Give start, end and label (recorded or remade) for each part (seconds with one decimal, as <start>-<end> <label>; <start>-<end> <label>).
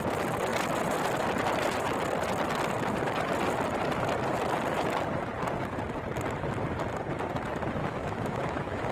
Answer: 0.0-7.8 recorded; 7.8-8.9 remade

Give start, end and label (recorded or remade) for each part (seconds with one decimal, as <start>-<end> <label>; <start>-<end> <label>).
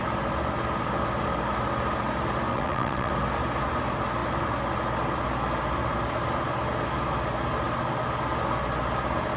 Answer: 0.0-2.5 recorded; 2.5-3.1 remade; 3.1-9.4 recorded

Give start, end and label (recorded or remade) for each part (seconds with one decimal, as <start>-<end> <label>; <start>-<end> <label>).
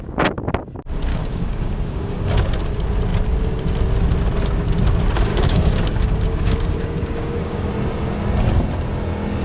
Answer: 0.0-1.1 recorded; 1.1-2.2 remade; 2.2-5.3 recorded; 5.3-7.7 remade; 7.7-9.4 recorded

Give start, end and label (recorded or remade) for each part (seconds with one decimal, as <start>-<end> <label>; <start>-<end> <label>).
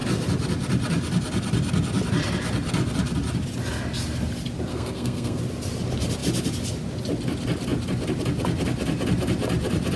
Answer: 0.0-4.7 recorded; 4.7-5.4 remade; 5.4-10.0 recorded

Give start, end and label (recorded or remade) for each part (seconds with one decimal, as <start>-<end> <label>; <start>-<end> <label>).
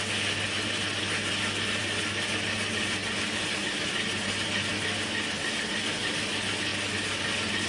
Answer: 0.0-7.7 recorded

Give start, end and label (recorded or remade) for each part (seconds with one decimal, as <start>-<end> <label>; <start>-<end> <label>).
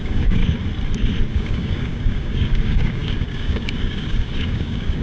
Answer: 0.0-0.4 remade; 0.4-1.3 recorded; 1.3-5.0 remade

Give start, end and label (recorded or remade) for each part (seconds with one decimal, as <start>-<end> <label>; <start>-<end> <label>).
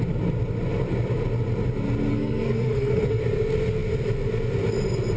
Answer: 0.0-2.1 recorded; 2.1-3.2 remade; 3.2-5.2 recorded